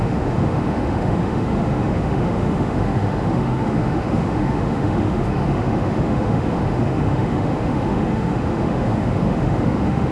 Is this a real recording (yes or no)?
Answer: no